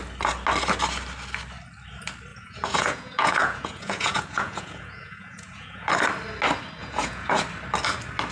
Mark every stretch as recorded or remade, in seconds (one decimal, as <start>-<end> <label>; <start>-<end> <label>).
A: 0.0-2.3 recorded; 2.3-5.9 remade; 5.9-6.8 recorded; 6.8-7.4 remade; 7.4-8.3 recorded